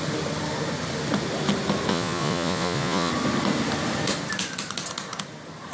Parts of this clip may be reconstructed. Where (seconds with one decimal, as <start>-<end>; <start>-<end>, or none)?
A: 1.9-3.1